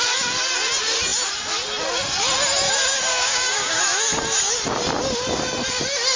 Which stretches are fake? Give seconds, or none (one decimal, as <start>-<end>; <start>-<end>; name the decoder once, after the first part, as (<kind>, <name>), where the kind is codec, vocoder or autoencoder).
3.1-3.8 (codec, DAC)